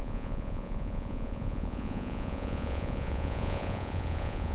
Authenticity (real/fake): fake